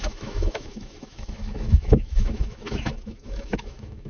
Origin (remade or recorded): remade